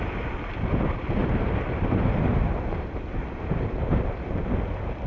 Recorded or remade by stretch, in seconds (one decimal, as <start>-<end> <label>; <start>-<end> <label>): 0.0-1.2 recorded; 1.2-4.3 remade; 4.3-5.1 recorded